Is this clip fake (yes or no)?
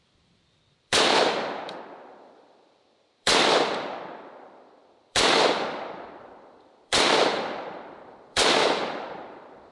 yes